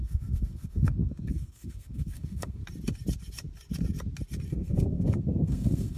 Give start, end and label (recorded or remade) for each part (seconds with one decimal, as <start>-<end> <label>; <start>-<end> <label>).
0.0-2.6 remade; 2.6-4.5 recorded; 4.5-6.0 remade